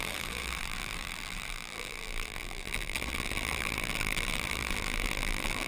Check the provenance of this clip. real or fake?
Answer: fake